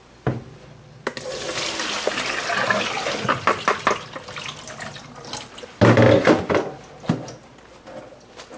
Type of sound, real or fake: real